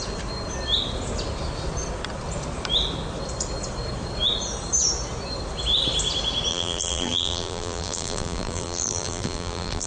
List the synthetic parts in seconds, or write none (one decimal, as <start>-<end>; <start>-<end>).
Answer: 6.5-9.9